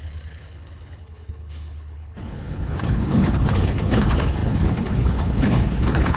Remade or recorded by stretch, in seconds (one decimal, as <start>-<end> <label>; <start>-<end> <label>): 0.0-6.2 remade